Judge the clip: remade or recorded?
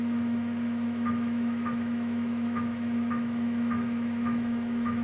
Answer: remade